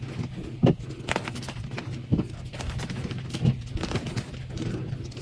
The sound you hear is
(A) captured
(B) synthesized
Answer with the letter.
A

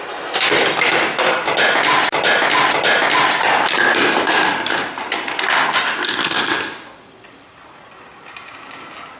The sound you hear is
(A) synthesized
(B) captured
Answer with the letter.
B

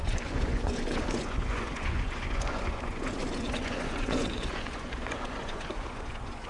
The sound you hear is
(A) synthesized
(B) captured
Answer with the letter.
A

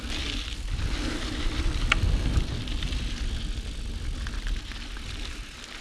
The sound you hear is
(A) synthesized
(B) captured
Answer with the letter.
B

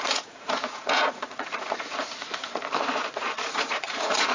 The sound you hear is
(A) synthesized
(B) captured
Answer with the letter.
A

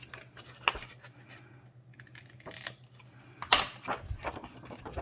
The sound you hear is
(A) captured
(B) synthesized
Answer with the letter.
A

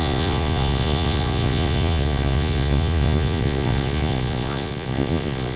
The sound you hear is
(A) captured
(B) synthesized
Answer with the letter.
B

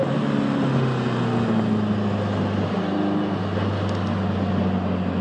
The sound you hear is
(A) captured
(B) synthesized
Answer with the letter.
A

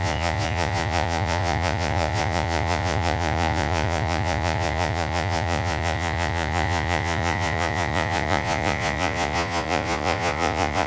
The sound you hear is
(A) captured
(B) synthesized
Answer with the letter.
B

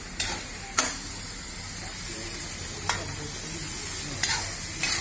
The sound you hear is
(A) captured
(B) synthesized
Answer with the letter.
A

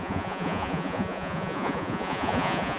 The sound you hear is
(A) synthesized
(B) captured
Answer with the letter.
A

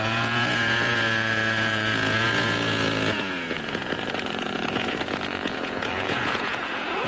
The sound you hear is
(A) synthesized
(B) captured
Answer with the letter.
A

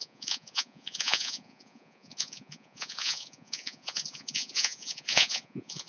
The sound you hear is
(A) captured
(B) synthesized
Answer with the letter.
B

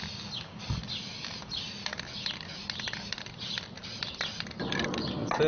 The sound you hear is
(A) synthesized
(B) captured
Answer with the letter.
B